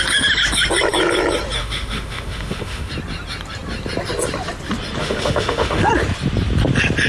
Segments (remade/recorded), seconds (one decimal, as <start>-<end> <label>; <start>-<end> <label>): 0.0-1.6 recorded; 1.6-2.9 remade; 2.9-5.0 recorded; 5.0-5.9 remade; 5.9-7.1 recorded